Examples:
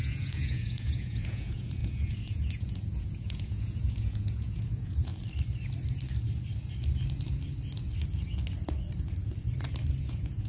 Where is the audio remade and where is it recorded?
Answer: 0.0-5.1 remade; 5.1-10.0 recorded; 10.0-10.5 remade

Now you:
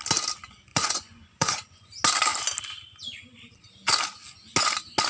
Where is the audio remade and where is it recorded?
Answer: 0.0-0.7 recorded; 0.7-1.9 remade; 1.9-5.1 recorded

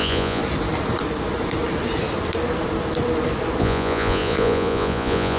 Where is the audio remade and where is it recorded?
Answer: 0.0-0.4 remade; 0.4-3.6 recorded; 3.6-5.4 remade

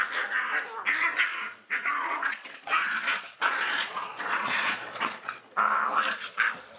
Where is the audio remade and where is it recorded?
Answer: 0.0-1.3 recorded; 1.3-5.4 remade; 5.4-6.8 recorded

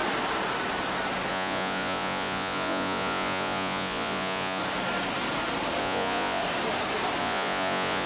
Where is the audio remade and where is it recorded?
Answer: 0.0-1.3 recorded; 1.3-4.6 remade; 4.6-5.8 recorded; 5.8-6.4 remade; 6.4-7.2 recorded; 7.2-8.1 remade